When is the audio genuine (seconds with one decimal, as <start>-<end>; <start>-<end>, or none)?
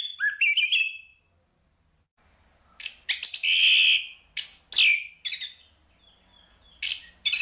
0.0-7.4